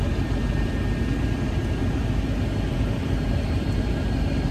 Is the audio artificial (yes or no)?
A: no